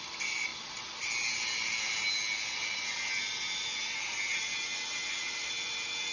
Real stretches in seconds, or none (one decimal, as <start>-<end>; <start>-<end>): 0.0-6.1